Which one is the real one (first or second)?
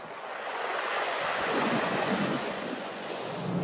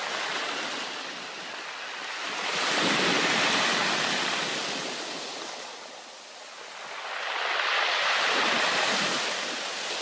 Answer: second